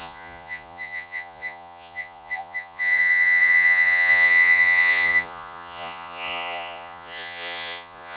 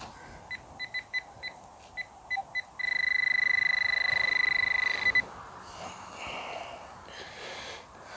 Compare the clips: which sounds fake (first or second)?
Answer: first